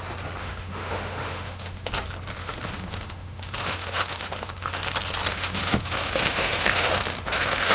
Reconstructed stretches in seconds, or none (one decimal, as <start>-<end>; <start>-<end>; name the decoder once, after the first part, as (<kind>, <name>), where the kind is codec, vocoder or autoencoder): 0.4-1.9 (autoencoder, DAC-VAE); 2.4-4.8; 5.3-7.7